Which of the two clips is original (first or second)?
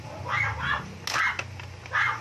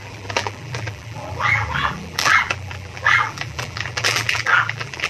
first